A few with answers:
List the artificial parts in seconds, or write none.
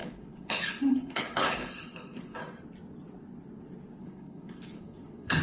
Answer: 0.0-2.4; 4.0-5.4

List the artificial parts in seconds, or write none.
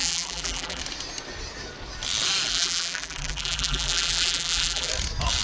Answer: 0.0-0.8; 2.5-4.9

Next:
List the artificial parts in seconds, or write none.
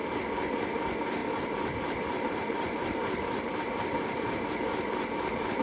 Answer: 1.2-4.5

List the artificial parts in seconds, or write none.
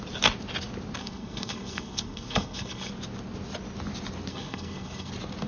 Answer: 1.0-2.9; 4.3-5.1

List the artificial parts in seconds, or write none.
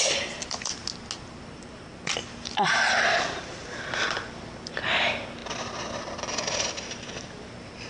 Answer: 0.0-0.8; 1.3-7.9